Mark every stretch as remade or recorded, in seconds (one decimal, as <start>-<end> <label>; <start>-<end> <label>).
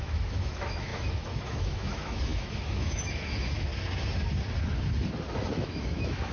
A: 0.0-3.7 remade; 3.7-5.5 recorded; 5.5-6.3 remade